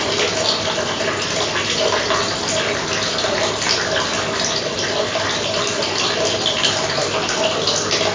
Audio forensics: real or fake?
real